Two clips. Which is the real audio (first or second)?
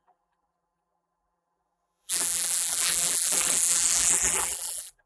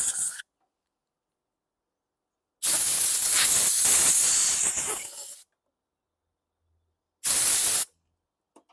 second